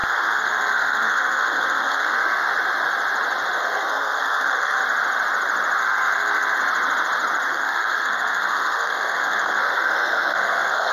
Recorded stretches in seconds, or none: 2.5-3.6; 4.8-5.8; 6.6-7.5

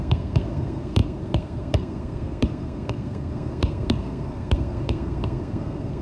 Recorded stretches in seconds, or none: none

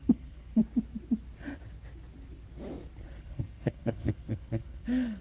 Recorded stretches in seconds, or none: 0.6-3.2

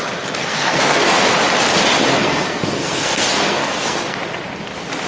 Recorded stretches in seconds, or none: 0.0-0.4; 1.2-2.1; 4.2-5.1

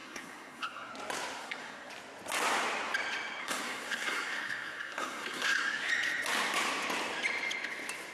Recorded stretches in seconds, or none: 0.9-1.4; 1.9-3.4; 5.9-8.1